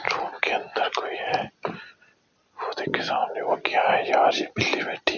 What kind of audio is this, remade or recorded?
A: recorded